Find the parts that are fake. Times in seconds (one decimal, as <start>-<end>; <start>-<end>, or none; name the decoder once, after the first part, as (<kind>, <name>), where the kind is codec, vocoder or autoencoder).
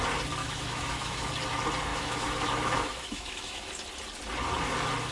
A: 0.4-1.3 (autoencoder, DAC-VAE); 1.9-3.7